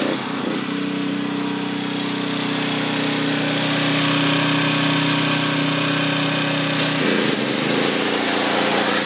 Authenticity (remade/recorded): recorded